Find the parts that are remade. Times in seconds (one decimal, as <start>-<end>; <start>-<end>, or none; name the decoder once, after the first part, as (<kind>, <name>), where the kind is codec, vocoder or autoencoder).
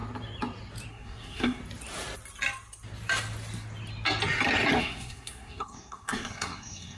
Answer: 0.9-1.6 (codec, SNAC); 4.8-7.0